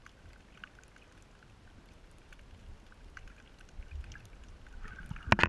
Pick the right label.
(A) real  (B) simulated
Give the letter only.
A